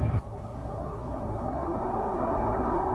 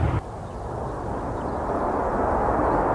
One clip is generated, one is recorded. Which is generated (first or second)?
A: first